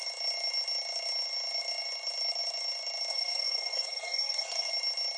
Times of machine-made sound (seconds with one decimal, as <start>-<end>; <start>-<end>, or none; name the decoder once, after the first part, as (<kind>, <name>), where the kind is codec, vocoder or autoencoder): 3.1-4.7 (codec, SNAC)